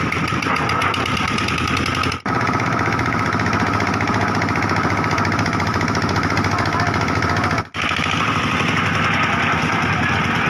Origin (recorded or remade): recorded